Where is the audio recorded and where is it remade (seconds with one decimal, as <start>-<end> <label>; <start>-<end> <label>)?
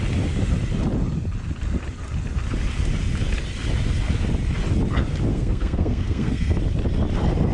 0.0-5.3 recorded; 5.3-6.6 remade; 6.6-7.5 recorded